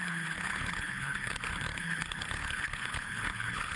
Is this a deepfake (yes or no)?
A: yes